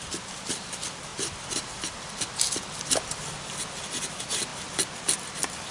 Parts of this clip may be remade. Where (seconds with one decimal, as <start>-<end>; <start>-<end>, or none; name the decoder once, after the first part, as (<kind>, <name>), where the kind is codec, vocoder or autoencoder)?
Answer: 0.0-4.5 (vocoder, BigVGAN v2); 5.0-5.7

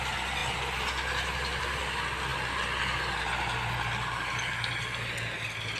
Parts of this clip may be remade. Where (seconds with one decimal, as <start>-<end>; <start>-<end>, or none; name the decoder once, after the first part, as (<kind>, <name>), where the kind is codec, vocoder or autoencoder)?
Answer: none

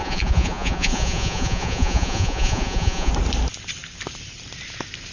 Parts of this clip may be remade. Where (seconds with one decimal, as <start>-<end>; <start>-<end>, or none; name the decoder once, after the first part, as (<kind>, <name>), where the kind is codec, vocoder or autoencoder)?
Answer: 0.0-3.1 (vocoder, Vocos)

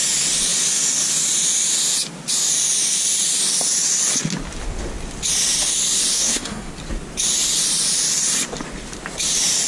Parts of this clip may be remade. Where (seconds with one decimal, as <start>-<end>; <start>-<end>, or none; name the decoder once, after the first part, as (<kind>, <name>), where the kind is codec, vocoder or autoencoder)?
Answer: 6.1-6.7 (codec, SNAC)

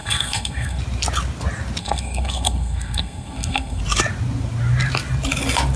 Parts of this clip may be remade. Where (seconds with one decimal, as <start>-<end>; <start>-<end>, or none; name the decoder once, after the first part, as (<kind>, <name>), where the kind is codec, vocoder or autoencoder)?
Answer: 0.0-0.8 (codec, SNAC); 1.8-3.8